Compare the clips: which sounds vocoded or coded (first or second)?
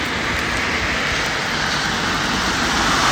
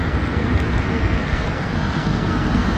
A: second